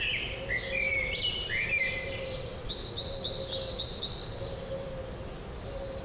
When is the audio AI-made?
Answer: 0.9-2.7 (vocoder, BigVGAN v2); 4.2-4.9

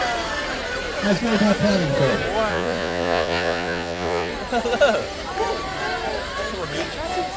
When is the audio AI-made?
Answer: 2.5-4.3 (vocoder, Vocos)

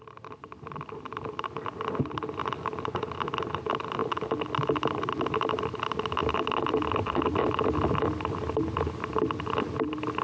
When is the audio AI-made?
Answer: none

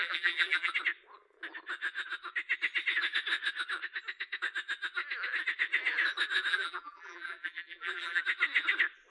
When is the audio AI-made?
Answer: 0.0-0.7 (vocoder, BigVGAN v2); 6.5-8.2

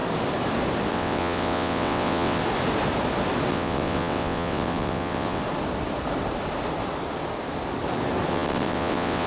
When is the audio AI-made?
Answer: 0.9-2.4 (vocoder, WaveNeXt); 3.5-5.4; 8.3-9.3

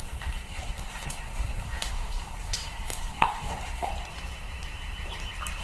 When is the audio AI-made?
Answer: 0.0-3.9 (codec, SNAC)

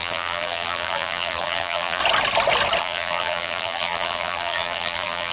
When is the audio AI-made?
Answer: 0.0-2.0 (vocoder, BigVGAN v2); 2.8-5.3

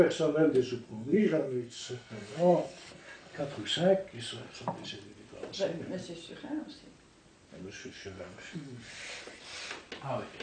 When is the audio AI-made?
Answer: 0.9-3.4 (codec, SNAC); 7.8-8.9